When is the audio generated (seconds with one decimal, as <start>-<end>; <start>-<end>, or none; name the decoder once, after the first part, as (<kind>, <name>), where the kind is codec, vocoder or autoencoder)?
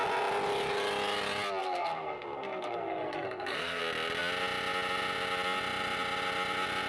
1.6-3.8 (codec, SNAC)